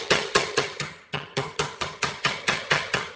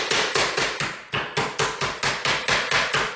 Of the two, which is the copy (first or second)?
first